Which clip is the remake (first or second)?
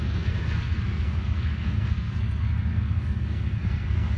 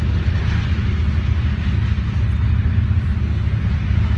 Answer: first